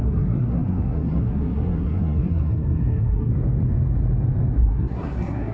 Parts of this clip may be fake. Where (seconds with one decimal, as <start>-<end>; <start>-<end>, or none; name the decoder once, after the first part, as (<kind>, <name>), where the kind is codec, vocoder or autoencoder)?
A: 0.0-3.3 (codec, SNAC); 4.6-5.5